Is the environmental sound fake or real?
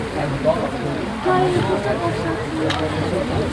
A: real